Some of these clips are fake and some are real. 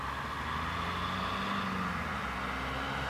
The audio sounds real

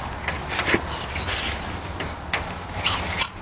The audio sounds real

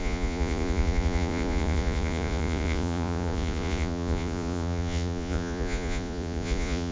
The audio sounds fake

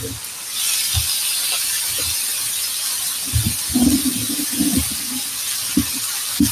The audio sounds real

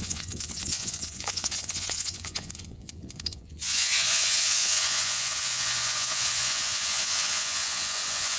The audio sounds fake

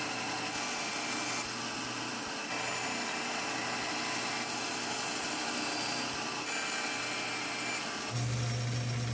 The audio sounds real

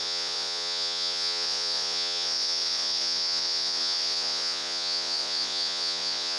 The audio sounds fake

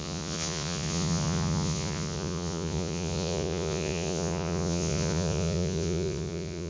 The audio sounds fake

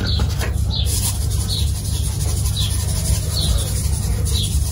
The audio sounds real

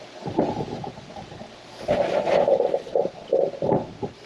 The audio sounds real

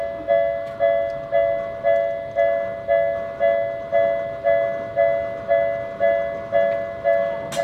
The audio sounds real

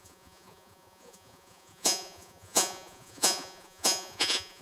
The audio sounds fake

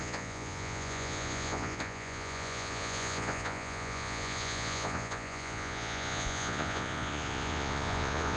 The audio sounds fake